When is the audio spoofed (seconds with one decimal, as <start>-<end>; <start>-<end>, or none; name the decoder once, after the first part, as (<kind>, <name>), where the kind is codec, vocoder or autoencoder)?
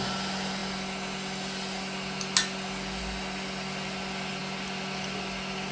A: none